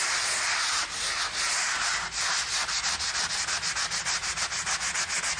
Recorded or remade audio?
recorded